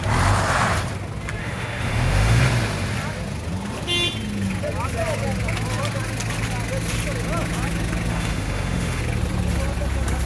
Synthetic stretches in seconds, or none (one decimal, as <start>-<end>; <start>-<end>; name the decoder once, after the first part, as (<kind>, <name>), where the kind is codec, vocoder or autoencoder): 1.4-2.4 (autoencoder, DAC-VAE); 8.1-9.0